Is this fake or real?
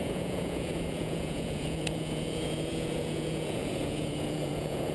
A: fake